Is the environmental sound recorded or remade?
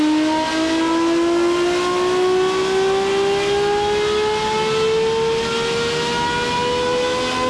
recorded